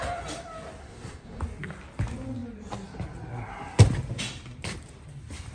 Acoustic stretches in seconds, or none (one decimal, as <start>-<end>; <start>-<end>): 0.0-0.8; 1.4-5.5